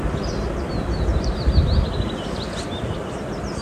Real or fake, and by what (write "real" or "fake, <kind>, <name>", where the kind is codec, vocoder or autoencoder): real